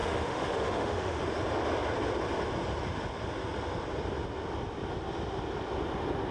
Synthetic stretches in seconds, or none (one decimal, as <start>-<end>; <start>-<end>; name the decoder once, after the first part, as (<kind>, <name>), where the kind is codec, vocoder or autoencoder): 0.0-1.2 (autoencoder, DAC-VAE)